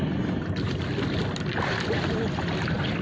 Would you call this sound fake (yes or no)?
no